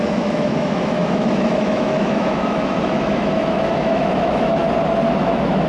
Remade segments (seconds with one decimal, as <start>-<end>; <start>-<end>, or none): 0.0-4.6; 5.2-5.7